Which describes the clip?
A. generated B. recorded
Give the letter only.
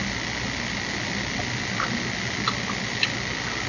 B